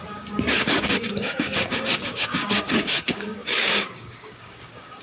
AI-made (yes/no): yes